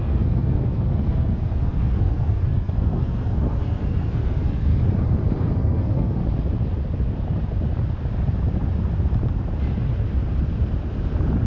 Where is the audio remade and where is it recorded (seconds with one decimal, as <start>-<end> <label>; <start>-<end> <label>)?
0.0-4.7 remade; 4.7-5.4 recorded; 5.4-6.2 remade; 6.2-11.5 recorded